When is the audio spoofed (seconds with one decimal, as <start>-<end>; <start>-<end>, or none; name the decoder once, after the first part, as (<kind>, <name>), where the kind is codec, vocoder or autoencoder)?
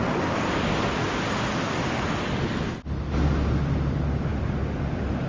none